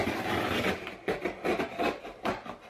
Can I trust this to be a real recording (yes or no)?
yes